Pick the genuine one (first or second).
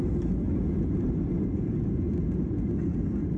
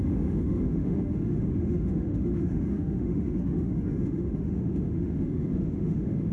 first